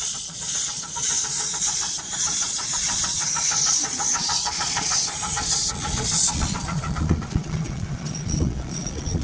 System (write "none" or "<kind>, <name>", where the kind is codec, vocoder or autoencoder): vocoder, Vocos